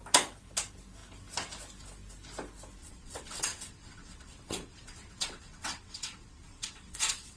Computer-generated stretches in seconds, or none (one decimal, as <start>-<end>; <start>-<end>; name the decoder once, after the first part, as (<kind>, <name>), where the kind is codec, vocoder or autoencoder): 2.8-7.4 (vocoder, WaveNeXt)

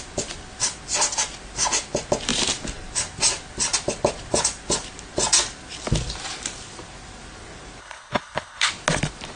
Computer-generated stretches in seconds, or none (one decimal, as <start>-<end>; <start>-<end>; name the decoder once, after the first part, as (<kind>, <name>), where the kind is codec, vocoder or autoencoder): 7.8-8.7 (codec, HILCodec)

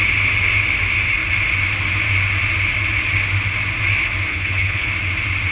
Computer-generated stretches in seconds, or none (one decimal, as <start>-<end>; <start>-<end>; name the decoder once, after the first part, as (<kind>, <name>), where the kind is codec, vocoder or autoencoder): 4.3-4.9 (codec, HILCodec)

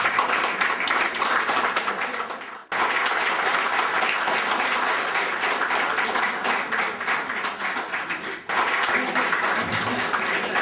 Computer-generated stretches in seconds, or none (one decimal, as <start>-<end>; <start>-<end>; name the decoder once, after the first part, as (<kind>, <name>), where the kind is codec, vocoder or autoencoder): none

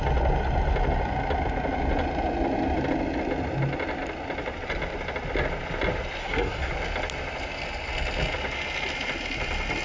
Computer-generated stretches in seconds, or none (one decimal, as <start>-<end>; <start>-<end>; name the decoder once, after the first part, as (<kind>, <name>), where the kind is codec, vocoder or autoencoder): 6.2-6.7 (codec, SNAC)